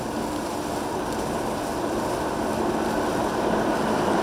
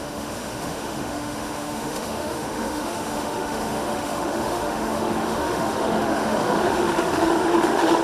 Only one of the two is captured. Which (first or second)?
first